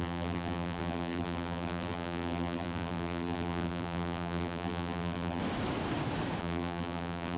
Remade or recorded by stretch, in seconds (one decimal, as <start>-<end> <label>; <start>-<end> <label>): 0.0-5.4 remade; 5.4-6.4 recorded; 6.4-7.4 remade